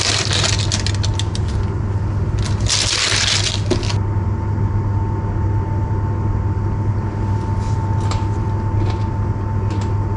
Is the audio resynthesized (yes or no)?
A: no